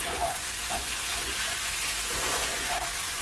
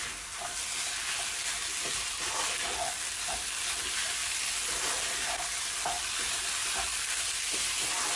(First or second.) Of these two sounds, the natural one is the second